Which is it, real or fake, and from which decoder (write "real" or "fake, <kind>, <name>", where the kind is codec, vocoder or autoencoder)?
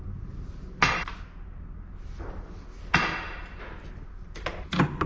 real